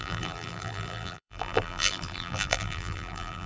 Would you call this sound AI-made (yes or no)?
yes